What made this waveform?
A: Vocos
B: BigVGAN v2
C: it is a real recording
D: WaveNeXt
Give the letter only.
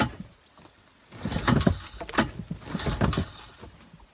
C